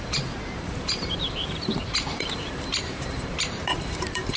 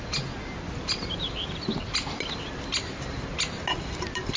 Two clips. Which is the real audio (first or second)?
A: second